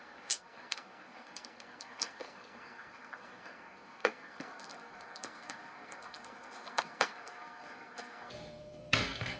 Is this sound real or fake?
fake